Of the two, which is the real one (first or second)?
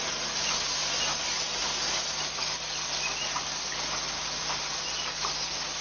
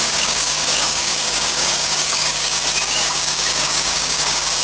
first